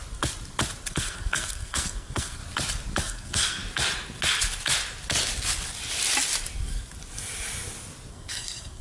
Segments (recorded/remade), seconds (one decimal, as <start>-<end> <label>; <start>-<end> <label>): 0.0-0.9 recorded; 0.9-2.4 remade; 2.4-3.0 recorded; 3.0-3.6 remade; 3.6-8.1 recorded; 8.1-8.8 remade